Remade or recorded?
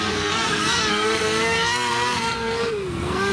remade